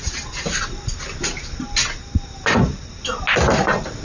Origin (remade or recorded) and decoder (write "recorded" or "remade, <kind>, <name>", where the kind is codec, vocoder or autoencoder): recorded